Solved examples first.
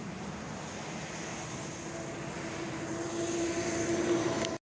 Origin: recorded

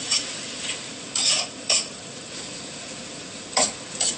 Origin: remade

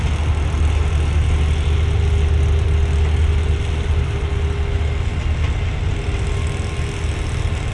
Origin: recorded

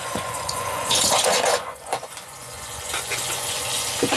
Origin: remade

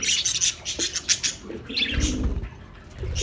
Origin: recorded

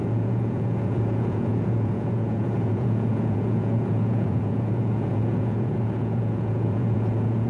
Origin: remade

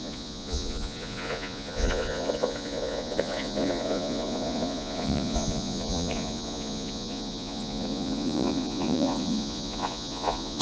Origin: remade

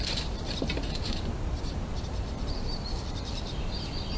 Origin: recorded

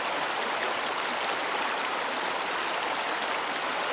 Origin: recorded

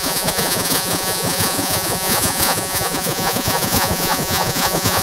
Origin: remade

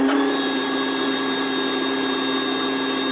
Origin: recorded